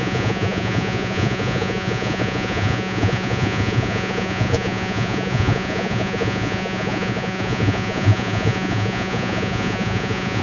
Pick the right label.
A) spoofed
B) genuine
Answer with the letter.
A